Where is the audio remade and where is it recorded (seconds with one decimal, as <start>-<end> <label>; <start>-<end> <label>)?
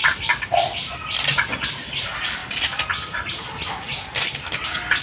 0.0-5.0 recorded